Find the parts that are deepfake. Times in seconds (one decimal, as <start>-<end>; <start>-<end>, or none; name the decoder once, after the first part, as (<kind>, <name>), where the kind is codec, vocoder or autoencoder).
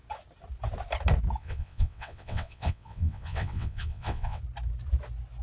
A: 1.4-4.4 (vocoder, WaveNeXt)